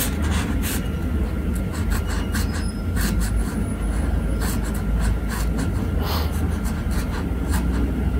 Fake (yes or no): no